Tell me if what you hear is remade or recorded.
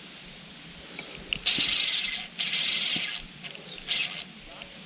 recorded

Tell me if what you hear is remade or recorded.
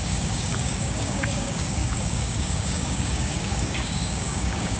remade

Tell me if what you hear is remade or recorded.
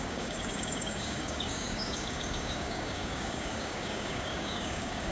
remade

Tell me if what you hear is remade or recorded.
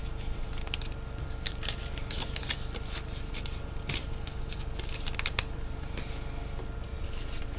recorded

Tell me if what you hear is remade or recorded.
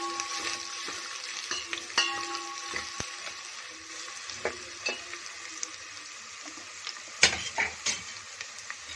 recorded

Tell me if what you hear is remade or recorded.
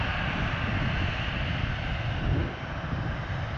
recorded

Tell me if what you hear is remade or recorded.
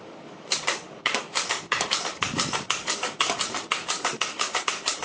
remade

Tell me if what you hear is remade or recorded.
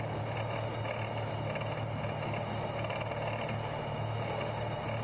recorded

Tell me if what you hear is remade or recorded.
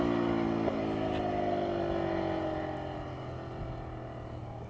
recorded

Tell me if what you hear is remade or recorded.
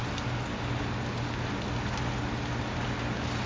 recorded